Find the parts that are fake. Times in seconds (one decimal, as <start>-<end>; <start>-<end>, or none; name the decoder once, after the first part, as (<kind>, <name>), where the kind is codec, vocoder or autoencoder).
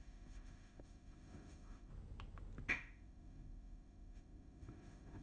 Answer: 0.0-1.9 (autoencoder, DAC-VAE); 2.7-5.2